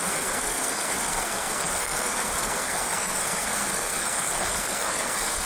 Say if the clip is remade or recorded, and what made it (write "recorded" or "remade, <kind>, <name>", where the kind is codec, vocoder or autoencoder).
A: remade, codec, SNAC